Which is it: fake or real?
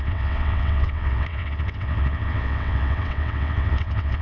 fake